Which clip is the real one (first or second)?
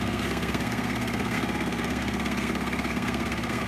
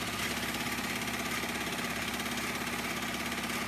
second